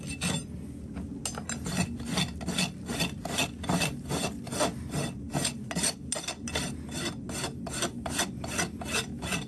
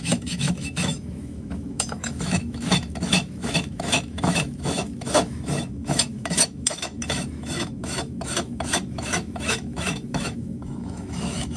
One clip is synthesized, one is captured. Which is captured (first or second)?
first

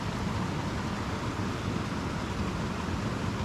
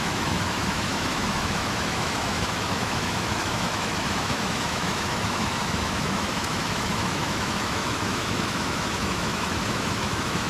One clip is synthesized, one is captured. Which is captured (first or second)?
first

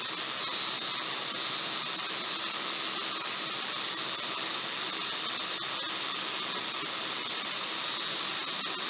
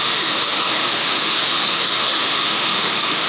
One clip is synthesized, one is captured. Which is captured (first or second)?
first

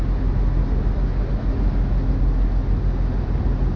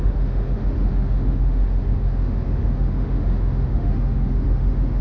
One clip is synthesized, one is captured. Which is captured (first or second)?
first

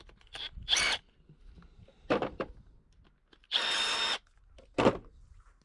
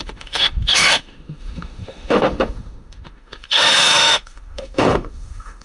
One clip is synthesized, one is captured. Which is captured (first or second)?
first